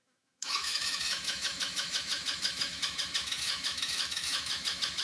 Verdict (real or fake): fake